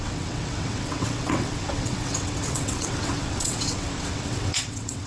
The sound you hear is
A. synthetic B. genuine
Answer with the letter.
A